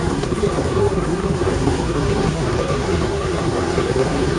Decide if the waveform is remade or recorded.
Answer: remade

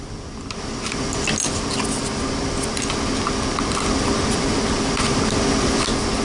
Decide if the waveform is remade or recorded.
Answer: recorded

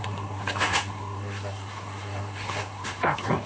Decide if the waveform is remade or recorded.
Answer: remade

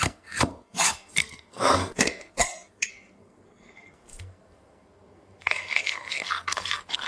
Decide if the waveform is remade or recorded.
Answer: remade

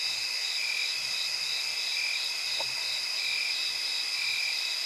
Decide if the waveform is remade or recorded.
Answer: recorded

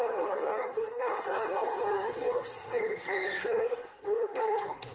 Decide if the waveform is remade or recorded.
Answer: remade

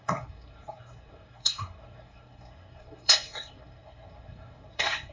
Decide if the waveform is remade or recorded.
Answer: remade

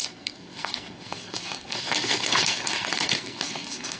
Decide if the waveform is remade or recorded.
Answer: remade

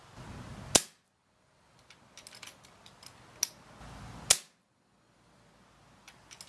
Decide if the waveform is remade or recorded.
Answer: recorded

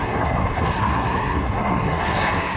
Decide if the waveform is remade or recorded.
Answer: remade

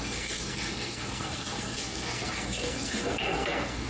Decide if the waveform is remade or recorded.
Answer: remade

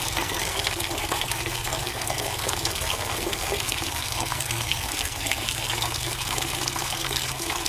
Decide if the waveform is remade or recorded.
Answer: remade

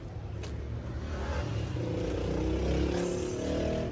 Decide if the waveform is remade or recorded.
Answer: recorded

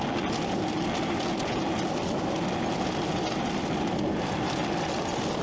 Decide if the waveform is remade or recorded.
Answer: recorded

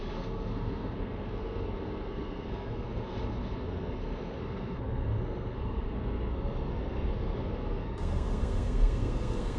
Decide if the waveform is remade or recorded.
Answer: remade